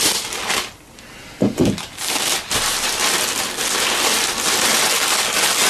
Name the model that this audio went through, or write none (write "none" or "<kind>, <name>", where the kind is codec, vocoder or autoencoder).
none